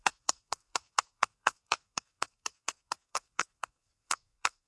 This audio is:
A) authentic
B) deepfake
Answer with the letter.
B